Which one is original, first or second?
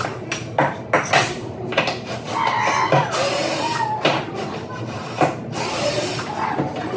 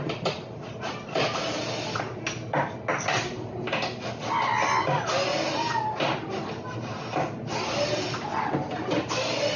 second